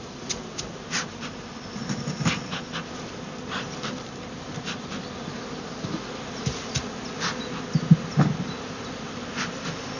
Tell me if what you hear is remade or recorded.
recorded